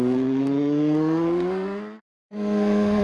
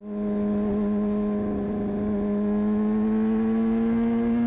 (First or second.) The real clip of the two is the second